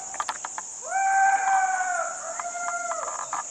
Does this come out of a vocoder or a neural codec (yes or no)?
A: no